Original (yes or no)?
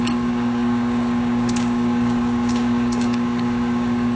no